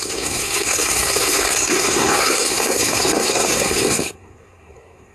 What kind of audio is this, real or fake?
fake